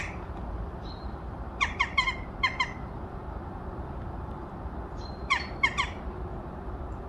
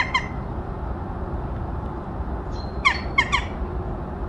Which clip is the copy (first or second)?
first